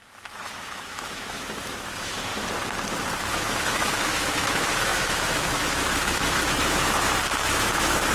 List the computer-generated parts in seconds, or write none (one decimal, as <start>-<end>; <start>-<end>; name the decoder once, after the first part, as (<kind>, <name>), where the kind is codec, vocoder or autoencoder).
0.0-2.3 (autoencoder, DAC-VAE); 3.3-8.1